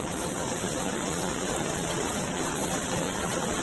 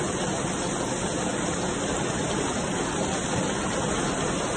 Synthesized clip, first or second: first